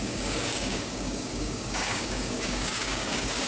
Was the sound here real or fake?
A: fake